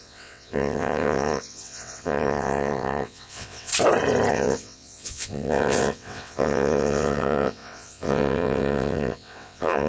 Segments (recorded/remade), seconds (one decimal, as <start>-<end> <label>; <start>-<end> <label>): 0.0-3.7 remade; 3.7-4.3 recorded; 4.3-9.9 remade